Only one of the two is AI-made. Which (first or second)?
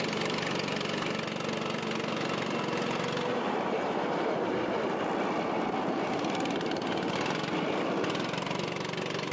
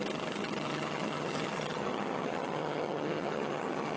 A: second